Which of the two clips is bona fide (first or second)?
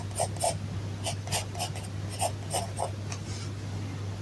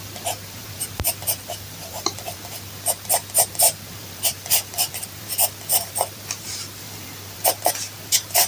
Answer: first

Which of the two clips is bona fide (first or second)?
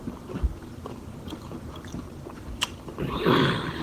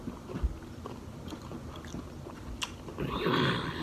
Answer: second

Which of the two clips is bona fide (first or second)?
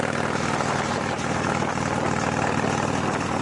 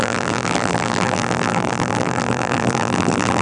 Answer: first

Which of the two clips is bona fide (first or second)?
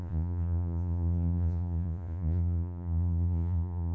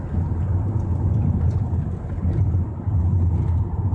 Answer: second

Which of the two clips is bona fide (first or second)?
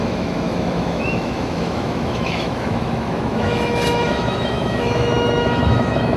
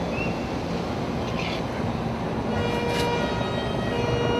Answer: second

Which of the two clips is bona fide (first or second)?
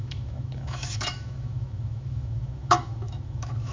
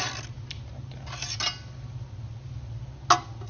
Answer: second